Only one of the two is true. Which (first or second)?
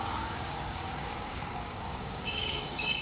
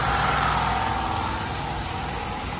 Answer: second